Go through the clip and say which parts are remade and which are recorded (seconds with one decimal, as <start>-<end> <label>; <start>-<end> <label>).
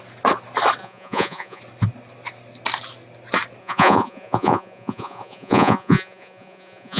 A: 0.0-0.8 recorded; 0.8-1.6 remade; 1.6-3.6 recorded; 3.6-7.0 remade